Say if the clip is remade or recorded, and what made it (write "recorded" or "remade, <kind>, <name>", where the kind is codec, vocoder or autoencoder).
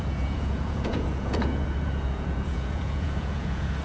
remade, vocoder, Vocos